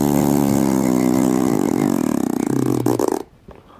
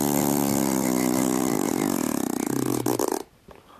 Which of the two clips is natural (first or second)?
first